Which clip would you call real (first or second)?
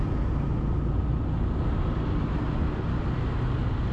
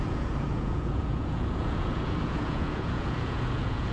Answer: first